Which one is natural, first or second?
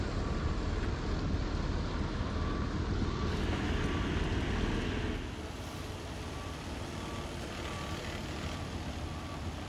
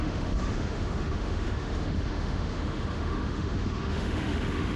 first